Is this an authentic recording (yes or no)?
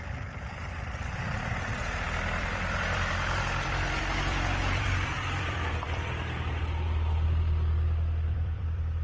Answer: no